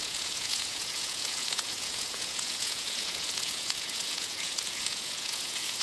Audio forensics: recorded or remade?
remade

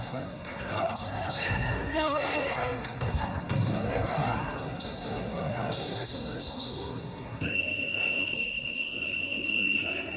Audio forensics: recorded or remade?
remade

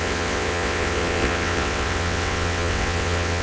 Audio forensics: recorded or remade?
remade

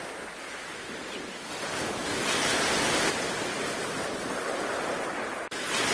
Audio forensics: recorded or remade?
recorded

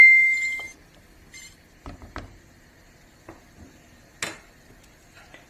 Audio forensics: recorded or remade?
recorded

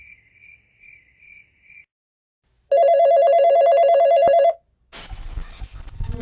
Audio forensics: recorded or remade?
recorded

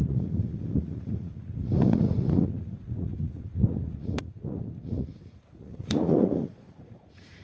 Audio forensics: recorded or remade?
remade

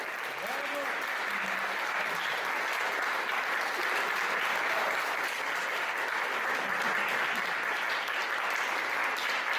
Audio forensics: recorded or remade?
recorded